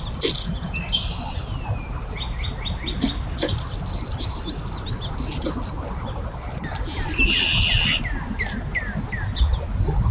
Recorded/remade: recorded